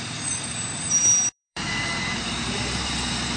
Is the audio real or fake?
fake